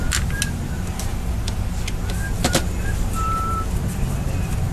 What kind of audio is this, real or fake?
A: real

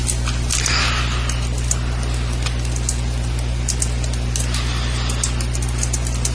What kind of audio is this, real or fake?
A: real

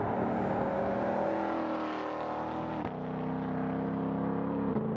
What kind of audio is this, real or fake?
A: real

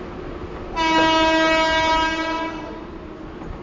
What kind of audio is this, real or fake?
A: real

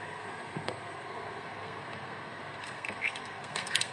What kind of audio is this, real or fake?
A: fake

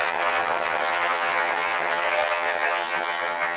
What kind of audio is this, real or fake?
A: fake